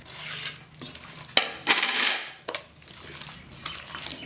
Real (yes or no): yes